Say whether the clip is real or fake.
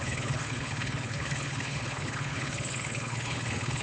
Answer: fake